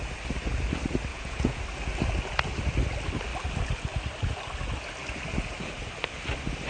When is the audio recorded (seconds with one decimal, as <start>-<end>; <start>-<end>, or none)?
0.0-1.1; 1.6-6.7